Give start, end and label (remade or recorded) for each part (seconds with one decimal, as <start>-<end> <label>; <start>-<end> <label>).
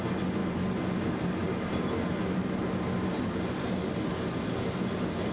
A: 0.0-5.3 recorded